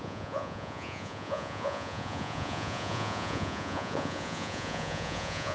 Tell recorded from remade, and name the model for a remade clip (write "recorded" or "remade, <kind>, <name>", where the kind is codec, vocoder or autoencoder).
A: remade, vocoder, Vocos